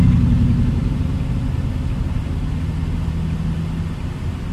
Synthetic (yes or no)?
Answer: no